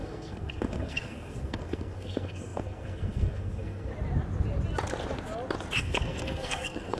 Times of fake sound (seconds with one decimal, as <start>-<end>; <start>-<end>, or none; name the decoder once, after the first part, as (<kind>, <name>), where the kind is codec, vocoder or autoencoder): 0.0-3.9 (codec, SNAC); 5.8-7.0